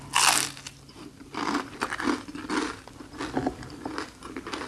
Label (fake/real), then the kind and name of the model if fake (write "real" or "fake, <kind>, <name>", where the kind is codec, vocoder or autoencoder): real